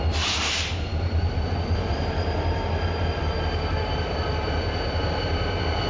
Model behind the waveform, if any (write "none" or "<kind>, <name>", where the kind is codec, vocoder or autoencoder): vocoder, BigVGAN v2